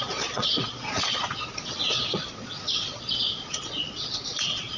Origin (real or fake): fake